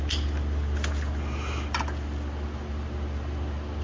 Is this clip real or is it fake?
real